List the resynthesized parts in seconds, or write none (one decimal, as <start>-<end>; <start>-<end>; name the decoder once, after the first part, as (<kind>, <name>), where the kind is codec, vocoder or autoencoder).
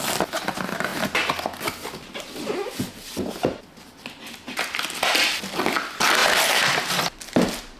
6.2-6.9 (vocoder, BigVGAN v2)